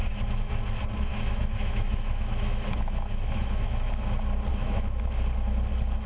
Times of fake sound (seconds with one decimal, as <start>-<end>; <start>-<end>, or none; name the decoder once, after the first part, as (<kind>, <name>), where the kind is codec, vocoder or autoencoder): 0.0-0.5 (autoencoder, DAC-VAE); 1.1-3.9; 4.5-5.0